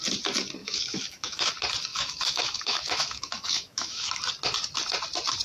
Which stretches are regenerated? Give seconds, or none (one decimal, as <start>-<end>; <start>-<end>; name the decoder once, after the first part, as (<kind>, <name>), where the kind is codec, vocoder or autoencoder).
0.6-1.5 (autoencoder, DAC-VAE); 1.9-4.2